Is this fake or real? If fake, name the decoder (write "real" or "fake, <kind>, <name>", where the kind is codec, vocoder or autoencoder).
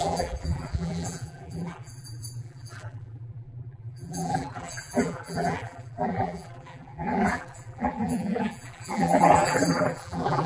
fake, vocoder, BigVGAN v2